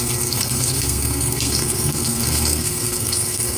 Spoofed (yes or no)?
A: yes